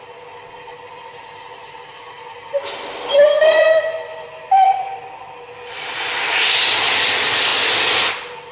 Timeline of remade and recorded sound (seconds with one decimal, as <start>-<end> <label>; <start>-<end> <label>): 0.0-8.5 recorded